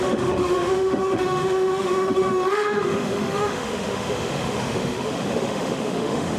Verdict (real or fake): fake